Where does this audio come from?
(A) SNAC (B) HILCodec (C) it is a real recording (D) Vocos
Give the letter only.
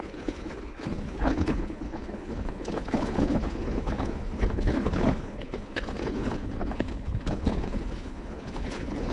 B